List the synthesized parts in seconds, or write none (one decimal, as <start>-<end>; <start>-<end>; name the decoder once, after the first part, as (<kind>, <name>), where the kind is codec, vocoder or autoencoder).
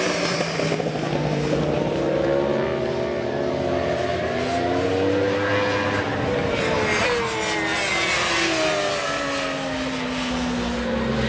none